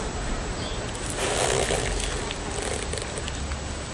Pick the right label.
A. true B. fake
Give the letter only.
A